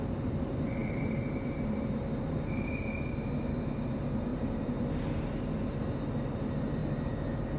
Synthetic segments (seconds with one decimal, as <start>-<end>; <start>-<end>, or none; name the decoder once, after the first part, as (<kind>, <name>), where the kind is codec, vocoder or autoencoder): 0.8-2.7 (vocoder, BigVGAN v2); 4.3-5.0